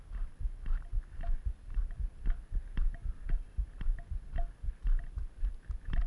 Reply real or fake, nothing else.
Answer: real